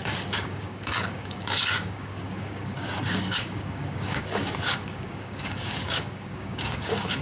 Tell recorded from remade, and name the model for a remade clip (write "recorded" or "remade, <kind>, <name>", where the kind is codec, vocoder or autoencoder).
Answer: remade, codec, DAC